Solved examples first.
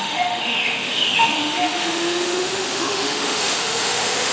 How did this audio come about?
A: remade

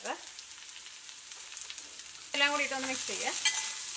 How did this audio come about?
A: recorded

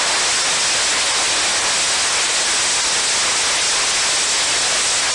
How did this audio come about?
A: recorded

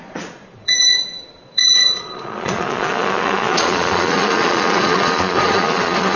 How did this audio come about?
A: remade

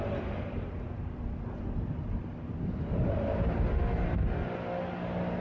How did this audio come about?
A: recorded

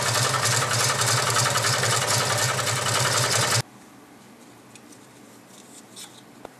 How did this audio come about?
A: recorded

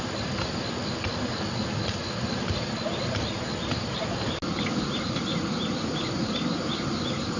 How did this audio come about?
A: recorded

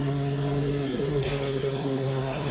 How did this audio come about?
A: remade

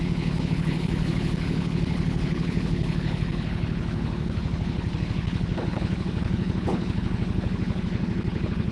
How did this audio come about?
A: remade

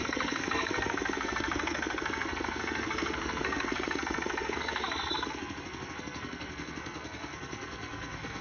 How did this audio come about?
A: remade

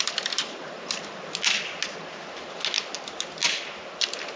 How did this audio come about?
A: recorded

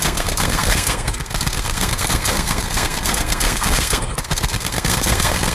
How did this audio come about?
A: remade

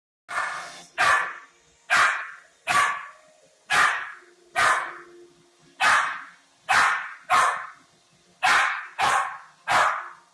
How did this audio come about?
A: recorded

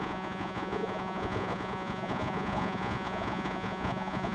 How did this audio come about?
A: remade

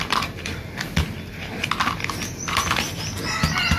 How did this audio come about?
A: recorded